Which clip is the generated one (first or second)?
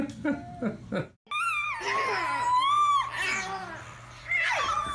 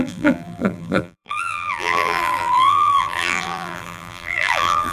second